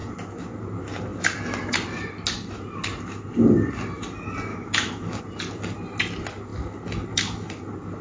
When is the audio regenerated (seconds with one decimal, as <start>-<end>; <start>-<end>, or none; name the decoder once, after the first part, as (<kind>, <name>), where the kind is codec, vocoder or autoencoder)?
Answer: 4.5-5.2 (autoencoder, DAC-VAE)